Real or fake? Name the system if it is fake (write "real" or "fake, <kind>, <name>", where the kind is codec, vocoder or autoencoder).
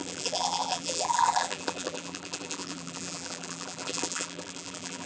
fake, vocoder, BigVGAN v2